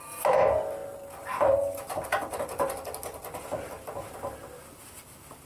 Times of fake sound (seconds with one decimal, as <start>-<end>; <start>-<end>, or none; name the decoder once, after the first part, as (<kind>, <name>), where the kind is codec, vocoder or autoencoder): none